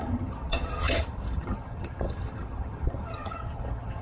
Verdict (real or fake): fake